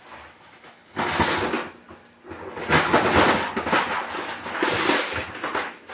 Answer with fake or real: real